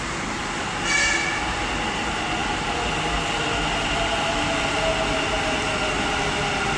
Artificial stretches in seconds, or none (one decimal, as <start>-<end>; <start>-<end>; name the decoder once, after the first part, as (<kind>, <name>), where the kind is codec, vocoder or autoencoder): none